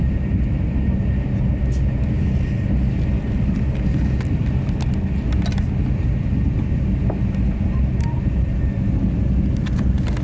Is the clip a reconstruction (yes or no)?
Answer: no